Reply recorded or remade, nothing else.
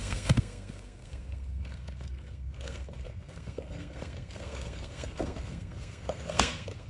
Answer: remade